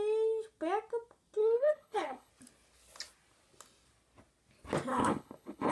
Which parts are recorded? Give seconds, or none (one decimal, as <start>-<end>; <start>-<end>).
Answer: 0.0-1.4; 2.3-4.9